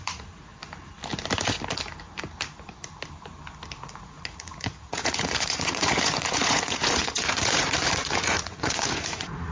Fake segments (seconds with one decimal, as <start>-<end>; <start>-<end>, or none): 0.0-0.5; 3.8-9.5